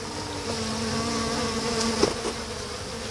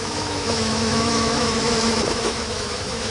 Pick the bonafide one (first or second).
first